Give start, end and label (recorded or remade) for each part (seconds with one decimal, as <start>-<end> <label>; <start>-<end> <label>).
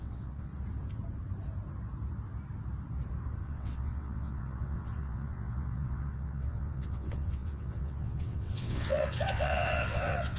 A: 0.0-0.5 remade; 0.5-3.4 recorded; 3.4-10.4 remade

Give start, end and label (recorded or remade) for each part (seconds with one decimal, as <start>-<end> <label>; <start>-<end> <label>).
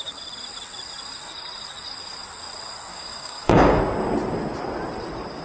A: 0.0-2.9 recorded; 2.9-3.8 remade; 3.8-5.4 recorded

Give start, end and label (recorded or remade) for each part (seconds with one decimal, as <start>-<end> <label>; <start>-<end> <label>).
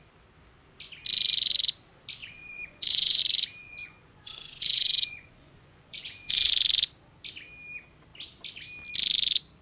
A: 0.0-2.2 recorded; 2.2-3.2 remade; 3.2-3.6 recorded; 3.6-6.5 remade; 6.5-9.6 recorded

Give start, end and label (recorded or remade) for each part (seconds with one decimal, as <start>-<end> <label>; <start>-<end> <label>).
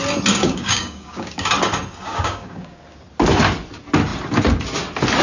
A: 0.0-0.4 recorded; 0.4-1.5 remade; 1.5-2.1 recorded; 2.1-2.8 remade; 2.8-5.2 recorded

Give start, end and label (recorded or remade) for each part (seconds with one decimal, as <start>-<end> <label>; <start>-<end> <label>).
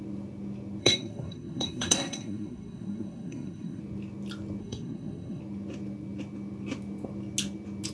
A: 0.0-0.8 recorded; 0.8-3.8 remade; 3.8-4.6 recorded; 4.6-5.4 remade; 5.4-7.9 recorded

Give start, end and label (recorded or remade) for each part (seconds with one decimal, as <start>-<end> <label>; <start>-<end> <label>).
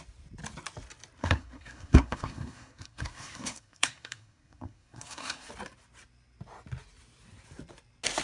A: 0.0-1.2 recorded; 1.2-5.5 remade; 5.5-8.2 recorded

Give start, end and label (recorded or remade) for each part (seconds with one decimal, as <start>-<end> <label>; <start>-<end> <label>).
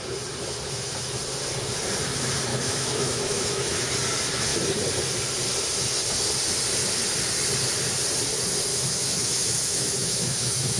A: 0.0-2.5 recorded; 2.5-3.9 remade; 3.9-8.7 recorded; 8.7-10.8 remade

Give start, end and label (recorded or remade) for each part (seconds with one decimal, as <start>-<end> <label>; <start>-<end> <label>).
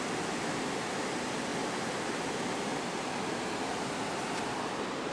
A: 0.0-1.5 recorded; 1.5-4.6 remade; 4.6-5.1 recorded